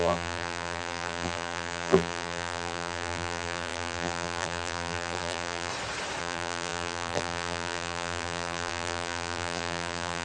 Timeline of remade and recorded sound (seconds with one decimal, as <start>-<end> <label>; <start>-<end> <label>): 0.0-5.7 remade; 5.7-6.2 recorded; 6.2-10.2 remade

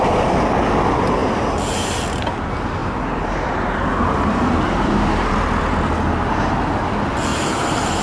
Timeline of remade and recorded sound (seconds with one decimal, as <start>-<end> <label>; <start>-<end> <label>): 0.0-2.8 recorded; 2.8-3.5 remade; 3.5-3.9 recorded; 3.9-5.9 remade; 5.9-7.3 recorded; 7.3-8.0 remade